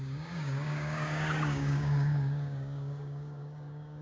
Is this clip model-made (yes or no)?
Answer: yes